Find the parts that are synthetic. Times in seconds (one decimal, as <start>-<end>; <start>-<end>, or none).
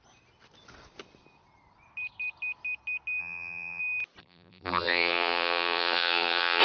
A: 3.2-3.8; 4.2-6.6